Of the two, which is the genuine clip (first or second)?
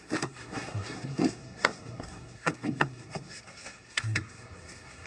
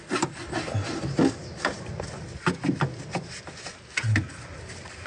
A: second